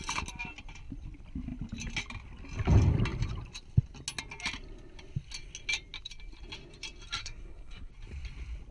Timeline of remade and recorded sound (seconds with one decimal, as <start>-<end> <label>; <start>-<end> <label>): 0.0-7.2 recorded; 7.2-7.9 remade; 7.9-8.7 recorded